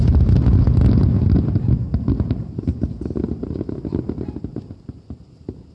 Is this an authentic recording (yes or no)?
yes